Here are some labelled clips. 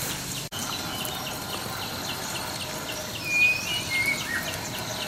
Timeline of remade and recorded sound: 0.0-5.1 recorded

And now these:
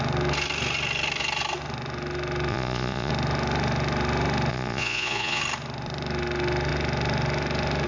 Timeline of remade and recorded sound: 0.0-2.5 recorded; 2.5-3.1 remade; 3.1-4.5 recorded; 4.5-5.4 remade; 5.4-7.9 recorded